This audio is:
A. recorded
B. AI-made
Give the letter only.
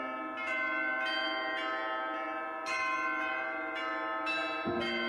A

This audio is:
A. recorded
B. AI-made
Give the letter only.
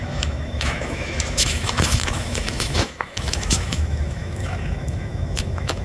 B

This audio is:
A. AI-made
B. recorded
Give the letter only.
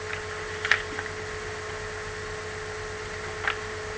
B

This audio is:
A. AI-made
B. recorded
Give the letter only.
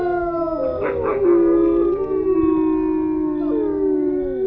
B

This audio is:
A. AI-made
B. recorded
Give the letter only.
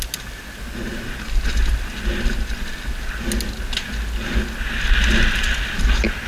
B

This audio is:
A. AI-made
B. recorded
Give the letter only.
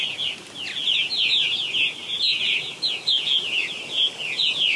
B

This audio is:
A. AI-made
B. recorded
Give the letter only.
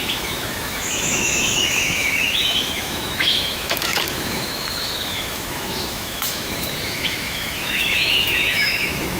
A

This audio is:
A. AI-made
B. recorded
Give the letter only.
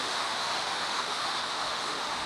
A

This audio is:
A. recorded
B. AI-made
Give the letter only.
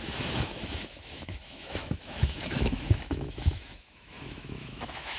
B